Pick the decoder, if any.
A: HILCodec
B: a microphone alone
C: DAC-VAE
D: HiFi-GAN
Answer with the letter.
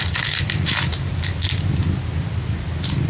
B